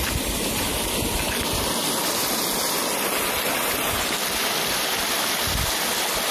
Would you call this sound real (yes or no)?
yes